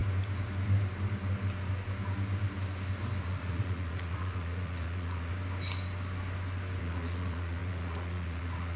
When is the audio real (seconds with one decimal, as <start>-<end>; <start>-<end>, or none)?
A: 0.0-3.2; 5.3-6.8